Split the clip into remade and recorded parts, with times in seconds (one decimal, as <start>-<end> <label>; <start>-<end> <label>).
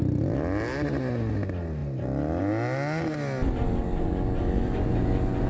0.0-5.5 recorded